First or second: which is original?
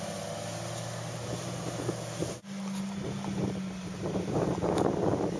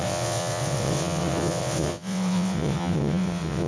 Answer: first